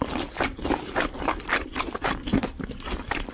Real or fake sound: real